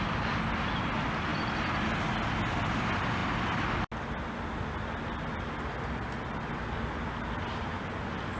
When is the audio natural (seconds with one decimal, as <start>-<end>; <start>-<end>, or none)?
0.0-8.4

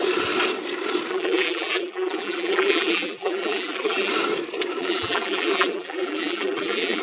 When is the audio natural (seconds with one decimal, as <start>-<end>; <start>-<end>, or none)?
0.0-1.1; 4.1-4.8

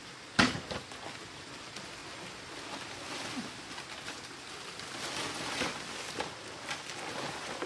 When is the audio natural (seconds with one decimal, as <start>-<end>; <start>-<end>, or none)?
0.0-7.7

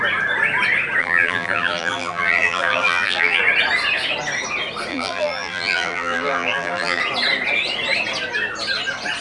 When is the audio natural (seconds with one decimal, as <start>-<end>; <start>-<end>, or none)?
0.0-1.0; 3.4-4.9; 7.0-9.2

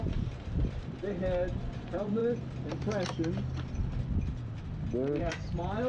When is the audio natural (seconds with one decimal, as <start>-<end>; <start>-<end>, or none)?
2.2-5.2